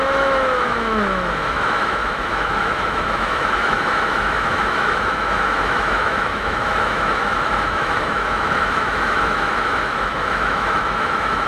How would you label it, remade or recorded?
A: remade